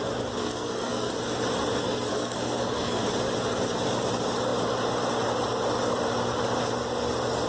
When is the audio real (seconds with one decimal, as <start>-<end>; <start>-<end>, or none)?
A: 0.0-0.4; 1.1-1.8; 3.0-7.5